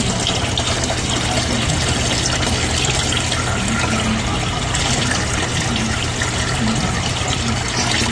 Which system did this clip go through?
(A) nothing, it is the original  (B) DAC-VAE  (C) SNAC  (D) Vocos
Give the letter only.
A